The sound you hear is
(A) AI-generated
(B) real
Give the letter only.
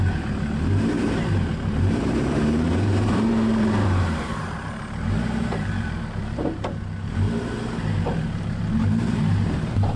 A